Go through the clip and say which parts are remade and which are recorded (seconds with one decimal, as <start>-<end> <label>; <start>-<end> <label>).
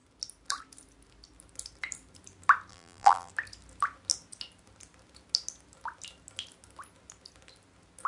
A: 0.0-2.7 recorded; 2.7-3.3 remade; 3.3-8.1 recorded